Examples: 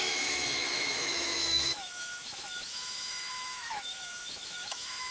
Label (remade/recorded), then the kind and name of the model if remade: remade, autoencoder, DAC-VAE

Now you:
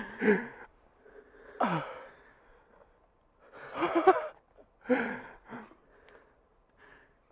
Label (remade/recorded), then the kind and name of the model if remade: recorded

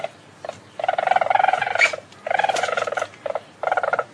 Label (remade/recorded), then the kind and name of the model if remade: recorded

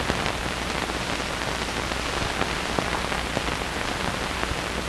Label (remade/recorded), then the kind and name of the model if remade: recorded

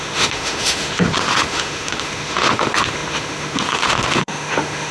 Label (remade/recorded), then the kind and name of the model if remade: remade, autoencoder, DAC-VAE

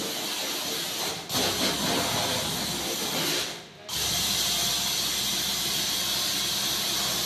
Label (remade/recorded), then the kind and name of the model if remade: recorded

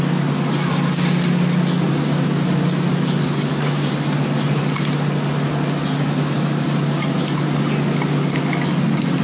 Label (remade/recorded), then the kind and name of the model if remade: recorded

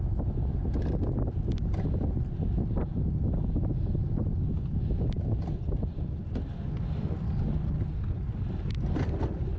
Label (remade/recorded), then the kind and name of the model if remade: recorded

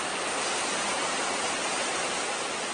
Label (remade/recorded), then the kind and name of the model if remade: recorded